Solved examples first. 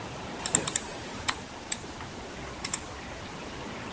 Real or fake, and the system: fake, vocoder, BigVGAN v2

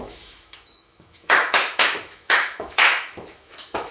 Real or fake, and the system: fake, autoencoder, DAC-VAE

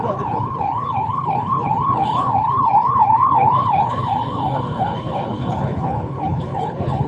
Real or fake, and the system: fake, codec, HILCodec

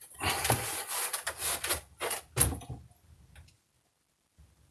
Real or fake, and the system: real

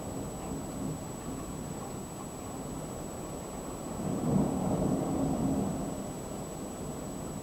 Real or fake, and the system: real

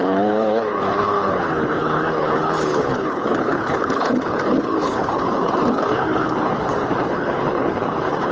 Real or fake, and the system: fake, codec, HILCodec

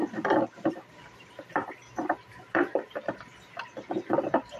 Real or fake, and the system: fake, vocoder, BigVGAN v2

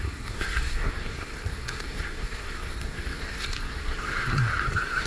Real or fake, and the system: fake, codec, SNAC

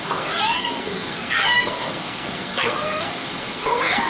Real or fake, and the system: fake, codec, SNAC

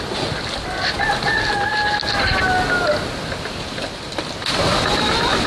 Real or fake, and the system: real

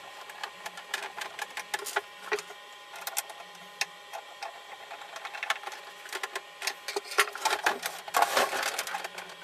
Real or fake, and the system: real